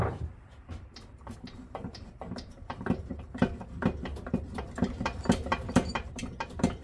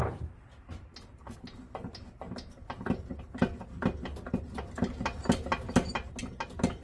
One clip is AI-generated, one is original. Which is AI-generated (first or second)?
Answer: first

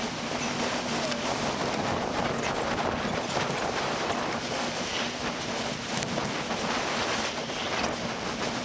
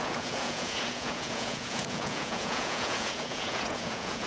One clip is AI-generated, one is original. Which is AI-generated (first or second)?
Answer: second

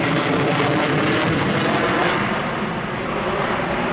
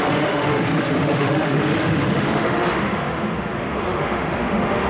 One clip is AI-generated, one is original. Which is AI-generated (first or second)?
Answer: second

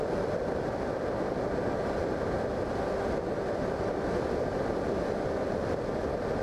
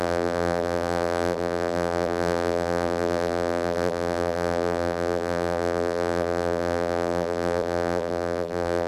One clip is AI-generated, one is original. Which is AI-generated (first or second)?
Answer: second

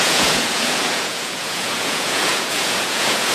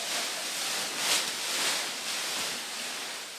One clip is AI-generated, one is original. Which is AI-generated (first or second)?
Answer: first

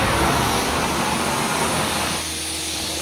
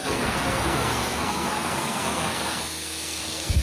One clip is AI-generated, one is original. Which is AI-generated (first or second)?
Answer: second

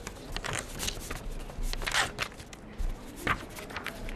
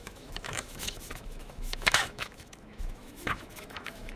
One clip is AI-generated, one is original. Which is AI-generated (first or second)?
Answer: second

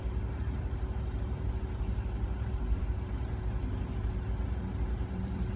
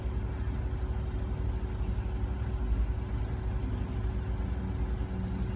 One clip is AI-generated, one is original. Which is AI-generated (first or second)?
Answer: first